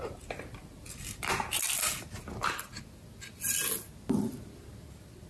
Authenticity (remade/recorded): recorded